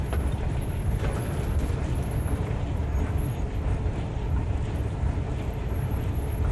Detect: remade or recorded remade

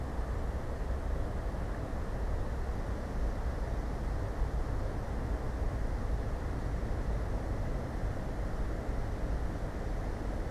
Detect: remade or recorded recorded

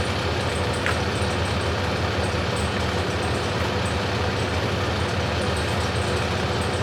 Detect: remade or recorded recorded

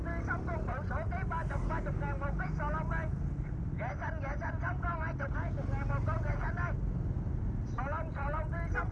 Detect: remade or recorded recorded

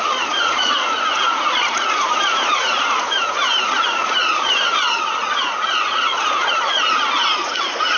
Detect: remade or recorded remade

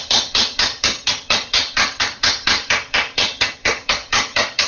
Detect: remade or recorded remade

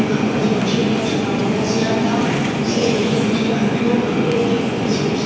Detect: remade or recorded remade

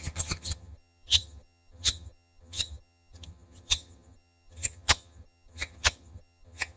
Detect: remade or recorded remade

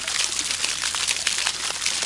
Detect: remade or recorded recorded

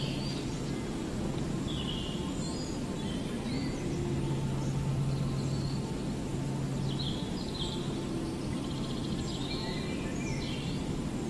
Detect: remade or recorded recorded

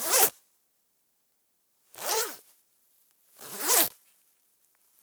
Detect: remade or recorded remade